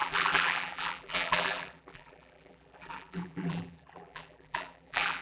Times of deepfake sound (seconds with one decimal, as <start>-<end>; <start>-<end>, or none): 0.0-5.2